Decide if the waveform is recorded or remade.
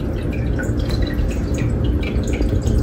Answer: recorded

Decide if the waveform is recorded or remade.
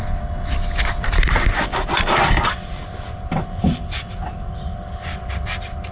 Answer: recorded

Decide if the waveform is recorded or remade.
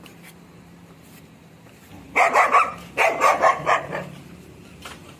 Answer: remade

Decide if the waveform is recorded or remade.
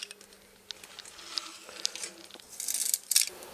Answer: recorded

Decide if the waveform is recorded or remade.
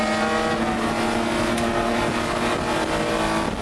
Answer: recorded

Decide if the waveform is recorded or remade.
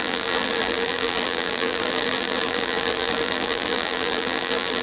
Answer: remade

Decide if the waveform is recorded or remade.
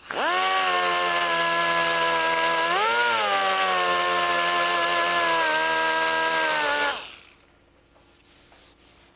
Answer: recorded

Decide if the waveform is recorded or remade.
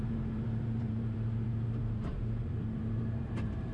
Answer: remade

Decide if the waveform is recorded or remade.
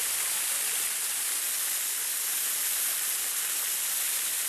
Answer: recorded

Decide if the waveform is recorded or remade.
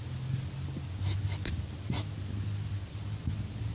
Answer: recorded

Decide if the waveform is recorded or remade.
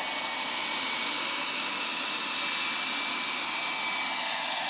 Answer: recorded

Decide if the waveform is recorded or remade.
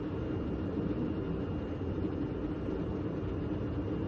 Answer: recorded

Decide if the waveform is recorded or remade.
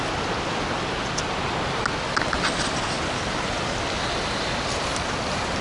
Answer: recorded